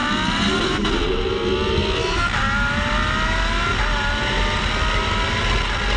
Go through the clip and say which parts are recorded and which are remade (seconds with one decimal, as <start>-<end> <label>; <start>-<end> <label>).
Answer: 0.0-6.0 recorded